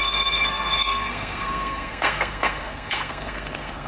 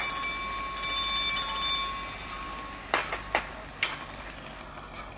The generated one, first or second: first